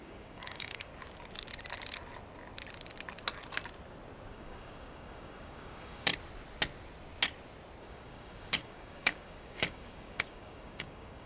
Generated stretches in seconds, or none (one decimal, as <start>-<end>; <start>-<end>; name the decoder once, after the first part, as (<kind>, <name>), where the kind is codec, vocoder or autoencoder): 0.0-0.9 (codec, DAC); 4.3-6.1; 7.8-11.3